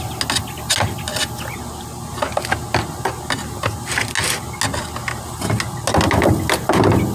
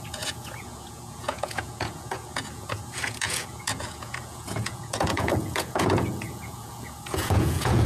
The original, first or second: first